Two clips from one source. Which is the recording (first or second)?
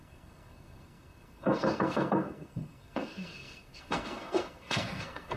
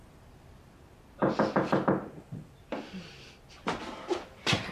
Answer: second